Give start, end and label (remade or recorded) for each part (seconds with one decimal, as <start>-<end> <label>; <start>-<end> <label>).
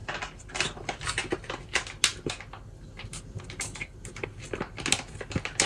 0.0-5.7 recorded